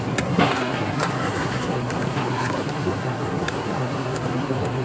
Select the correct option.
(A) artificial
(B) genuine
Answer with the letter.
A